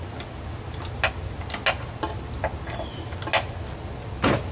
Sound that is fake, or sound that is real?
real